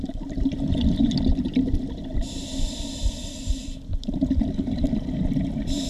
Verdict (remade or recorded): recorded